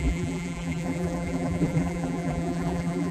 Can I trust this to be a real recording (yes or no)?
no